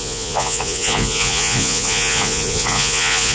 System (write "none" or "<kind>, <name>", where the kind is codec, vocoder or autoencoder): vocoder, Vocos